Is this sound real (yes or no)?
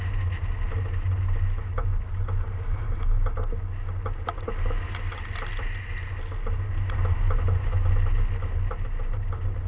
yes